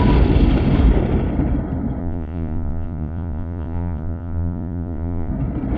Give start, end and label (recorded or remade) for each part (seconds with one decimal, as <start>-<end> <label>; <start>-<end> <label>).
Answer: 0.0-2.0 recorded; 2.0-5.3 remade; 5.3-5.8 recorded